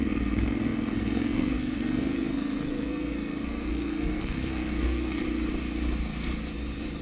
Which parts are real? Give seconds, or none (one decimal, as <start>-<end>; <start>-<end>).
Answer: 5.2-7.0